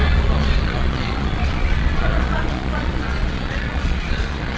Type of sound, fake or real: fake